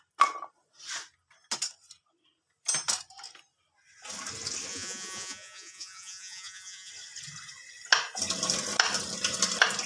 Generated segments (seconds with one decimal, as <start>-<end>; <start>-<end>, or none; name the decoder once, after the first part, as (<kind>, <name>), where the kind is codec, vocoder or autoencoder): 4.7-6.9 (vocoder, Vocos)